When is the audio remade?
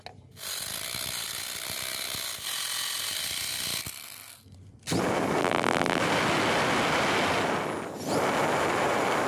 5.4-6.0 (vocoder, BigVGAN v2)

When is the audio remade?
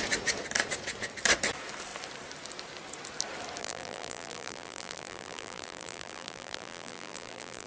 3.6-7.7 (vocoder, BigVGAN v2)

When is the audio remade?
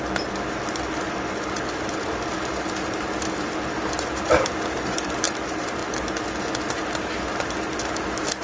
none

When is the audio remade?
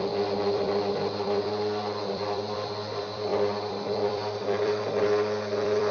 0.0-5.9 (vocoder, BigVGAN v2)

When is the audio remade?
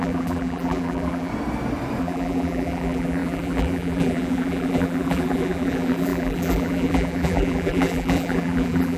0.0-1.3 (vocoder, BigVGAN v2); 2.0-9.0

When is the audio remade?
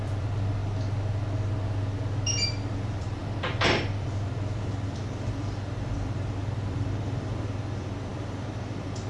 0.0-0.6 (vocoder, BigVGAN v2); 2.5-9.1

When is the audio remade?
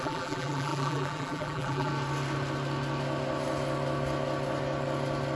0.0-1.9 (vocoder, BigVGAN v2)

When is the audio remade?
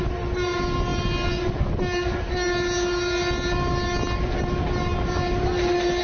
none